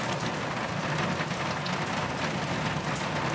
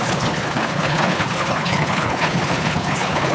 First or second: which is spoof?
second